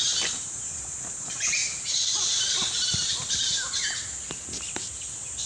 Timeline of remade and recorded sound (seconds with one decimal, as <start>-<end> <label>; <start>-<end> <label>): 0.0-1.6 remade; 1.6-4.9 recorded; 4.9-5.5 remade

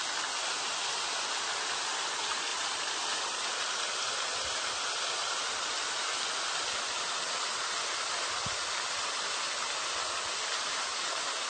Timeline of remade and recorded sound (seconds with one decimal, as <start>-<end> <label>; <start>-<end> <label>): 0.0-11.5 recorded

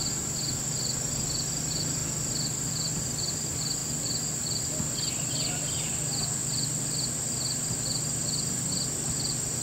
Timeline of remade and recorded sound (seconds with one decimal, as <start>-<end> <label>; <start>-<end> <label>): 0.0-2.0 remade; 2.0-2.9 recorded; 2.9-6.4 remade; 6.4-7.8 recorded; 7.8-9.6 remade

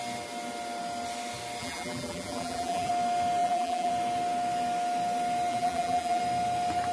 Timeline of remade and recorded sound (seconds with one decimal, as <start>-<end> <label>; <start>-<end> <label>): 0.0-1.6 recorded; 1.6-2.9 remade; 2.9-3.4 recorded; 3.4-3.9 remade; 3.9-5.5 recorded; 5.5-6.2 remade; 6.2-6.9 recorded

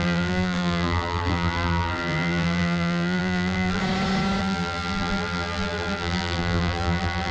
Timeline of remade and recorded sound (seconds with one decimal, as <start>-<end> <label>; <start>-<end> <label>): 0.0-3.8 remade; 3.8-4.4 recorded; 4.4-7.3 remade

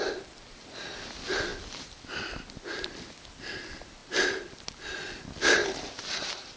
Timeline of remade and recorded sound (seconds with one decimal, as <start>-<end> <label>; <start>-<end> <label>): 0.0-5.6 recorded; 5.6-6.6 remade

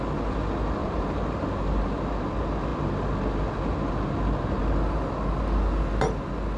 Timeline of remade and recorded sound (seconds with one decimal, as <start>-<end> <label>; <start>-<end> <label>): 0.0-0.8 recorded; 0.8-2.1 remade; 2.1-6.6 recorded